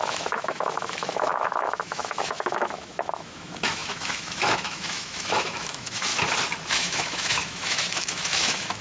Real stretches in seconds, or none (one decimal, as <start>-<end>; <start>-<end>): 6.1-6.7